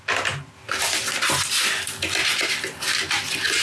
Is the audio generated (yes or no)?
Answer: no